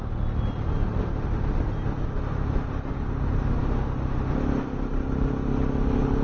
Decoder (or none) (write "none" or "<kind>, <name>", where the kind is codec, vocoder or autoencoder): none